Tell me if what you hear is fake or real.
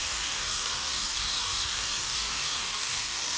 fake